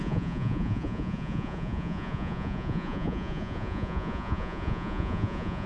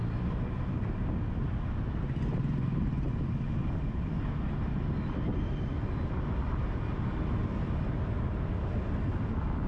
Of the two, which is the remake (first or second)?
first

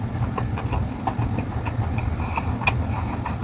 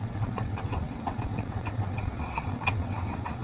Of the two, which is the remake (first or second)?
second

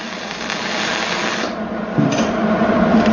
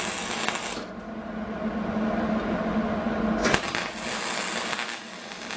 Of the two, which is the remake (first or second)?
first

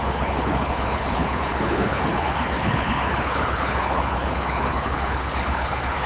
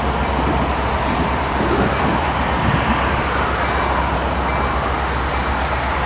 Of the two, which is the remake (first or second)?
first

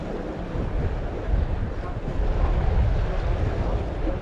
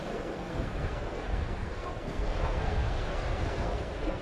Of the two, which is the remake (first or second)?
second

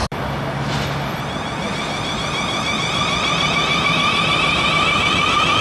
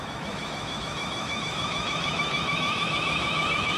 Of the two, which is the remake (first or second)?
second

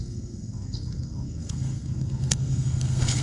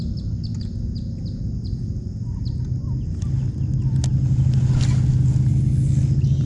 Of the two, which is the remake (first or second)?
first